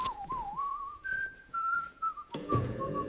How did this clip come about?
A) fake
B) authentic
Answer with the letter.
A